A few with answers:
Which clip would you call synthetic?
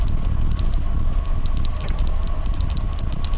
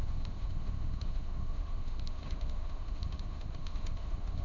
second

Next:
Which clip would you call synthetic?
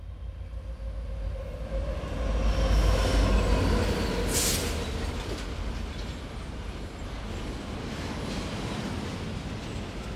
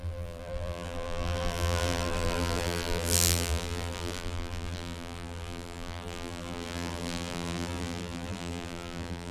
second